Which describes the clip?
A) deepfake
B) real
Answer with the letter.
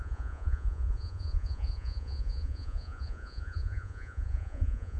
A